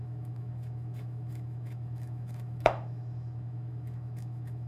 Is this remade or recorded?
remade